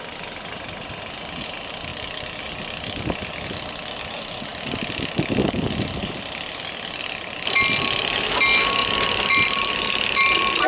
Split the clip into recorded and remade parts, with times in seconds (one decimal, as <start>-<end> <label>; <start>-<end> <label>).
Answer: 0.0-1.9 recorded; 1.9-2.4 remade; 2.4-8.8 recorded; 8.8-10.7 remade